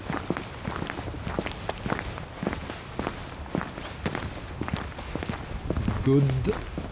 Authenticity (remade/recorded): recorded